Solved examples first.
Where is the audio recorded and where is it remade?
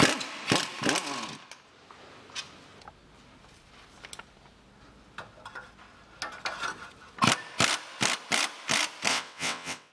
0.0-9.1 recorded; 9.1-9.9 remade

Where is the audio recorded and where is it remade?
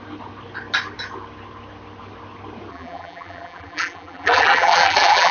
0.0-2.7 recorded; 2.7-5.3 remade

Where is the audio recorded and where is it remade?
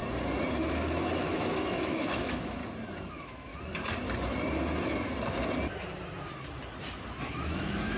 0.0-0.6 recorded; 0.6-2.6 remade; 2.6-3.1 recorded; 3.1-3.5 remade; 3.5-7.3 recorded; 7.3-8.0 remade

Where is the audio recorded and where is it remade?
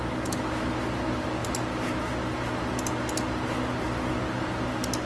0.0-5.1 recorded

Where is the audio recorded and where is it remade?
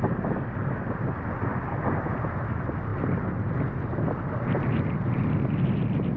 0.0-6.2 recorded